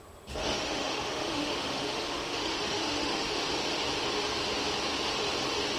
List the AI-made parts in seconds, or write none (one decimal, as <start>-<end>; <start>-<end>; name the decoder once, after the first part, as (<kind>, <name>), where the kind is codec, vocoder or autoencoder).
0.4-3.5 (autoencoder, DAC-VAE)